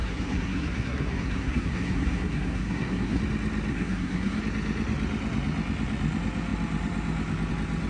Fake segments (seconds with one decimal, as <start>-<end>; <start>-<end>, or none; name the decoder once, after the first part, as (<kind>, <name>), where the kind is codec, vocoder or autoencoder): 0.0-3.2 (codec, SNAC); 3.7-4.4